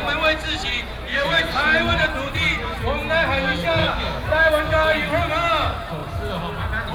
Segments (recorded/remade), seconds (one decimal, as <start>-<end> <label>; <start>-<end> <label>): 0.0-1.1 recorded; 1.1-1.6 remade; 1.6-3.8 recorded; 3.8-4.6 remade; 4.6-6.9 recorded